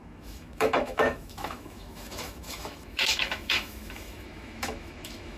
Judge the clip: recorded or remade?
remade